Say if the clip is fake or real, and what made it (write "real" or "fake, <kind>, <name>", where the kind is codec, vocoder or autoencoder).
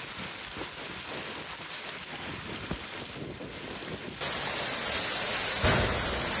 real